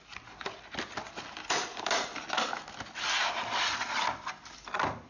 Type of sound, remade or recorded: recorded